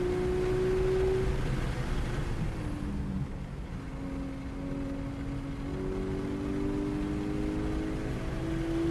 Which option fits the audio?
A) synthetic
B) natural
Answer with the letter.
B